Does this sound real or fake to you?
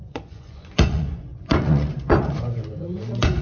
fake